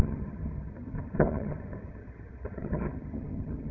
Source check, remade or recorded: remade